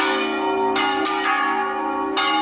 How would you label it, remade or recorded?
recorded